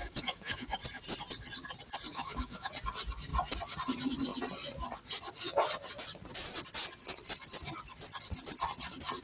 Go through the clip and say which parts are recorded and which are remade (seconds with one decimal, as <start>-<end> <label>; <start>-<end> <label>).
0.0-0.8 remade; 0.8-2.1 recorded; 2.1-2.7 remade; 2.7-9.2 recorded